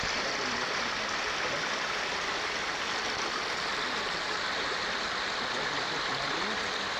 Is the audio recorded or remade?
recorded